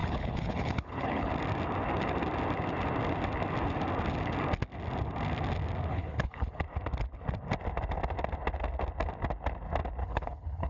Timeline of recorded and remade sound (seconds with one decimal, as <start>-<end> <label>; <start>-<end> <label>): 0.0-1.3 remade; 1.3-5.9 recorded; 5.9-6.6 remade; 6.6-10.0 recorded; 10.0-10.7 remade